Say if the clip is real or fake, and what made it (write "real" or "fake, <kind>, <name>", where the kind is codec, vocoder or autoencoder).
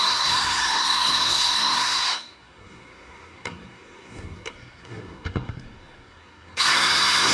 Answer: fake, codec, SNAC